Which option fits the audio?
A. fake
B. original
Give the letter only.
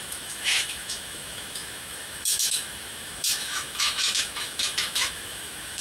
A